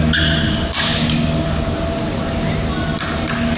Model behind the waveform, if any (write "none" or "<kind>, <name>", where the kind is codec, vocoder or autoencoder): none